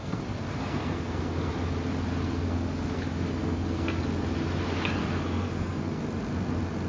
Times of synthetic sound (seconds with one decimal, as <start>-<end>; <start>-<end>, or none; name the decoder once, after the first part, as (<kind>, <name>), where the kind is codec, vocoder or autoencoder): 0.0-1.5 (codec, SNAC); 2.2-4.0; 5.0-6.0